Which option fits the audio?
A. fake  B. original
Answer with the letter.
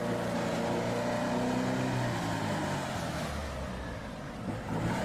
B